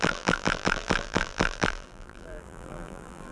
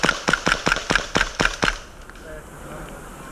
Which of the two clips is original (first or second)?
second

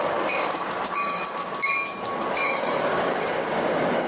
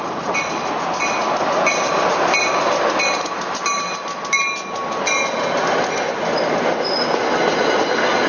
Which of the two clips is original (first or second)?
second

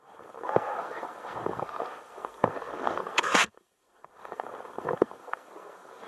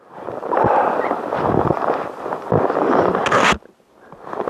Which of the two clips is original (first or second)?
second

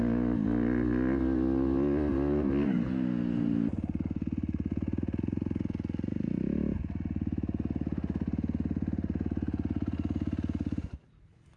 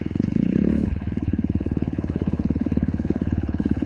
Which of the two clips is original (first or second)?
first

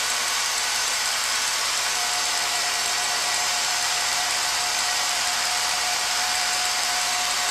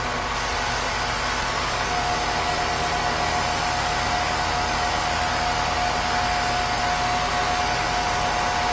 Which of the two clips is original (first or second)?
second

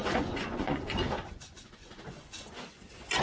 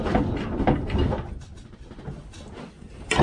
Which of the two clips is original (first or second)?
second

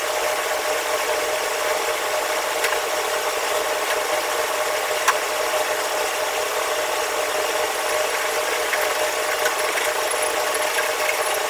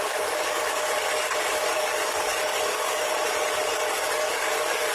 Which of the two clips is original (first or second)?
first